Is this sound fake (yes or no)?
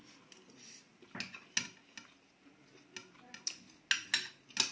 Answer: no